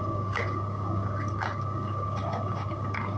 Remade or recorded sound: remade